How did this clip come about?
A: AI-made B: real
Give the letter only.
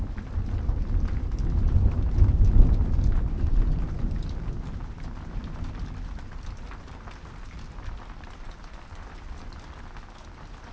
B